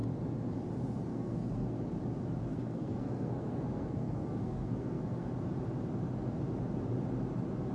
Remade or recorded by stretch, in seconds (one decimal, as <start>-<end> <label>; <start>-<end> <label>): 0.0-1.1 recorded; 1.1-1.8 remade; 1.8-2.4 recorded; 2.4-5.3 remade; 5.3-7.7 recorded

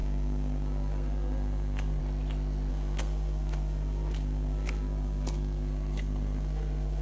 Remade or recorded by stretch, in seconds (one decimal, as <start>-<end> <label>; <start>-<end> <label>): 0.0-2.0 remade; 2.0-2.7 recorded; 2.7-7.0 remade

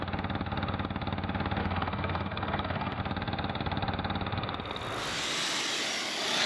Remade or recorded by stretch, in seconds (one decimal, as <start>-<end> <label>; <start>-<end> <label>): 0.0-1.6 recorded; 1.6-3.0 remade; 3.0-6.5 recorded